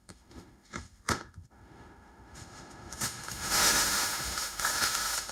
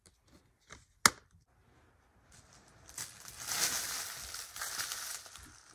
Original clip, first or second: second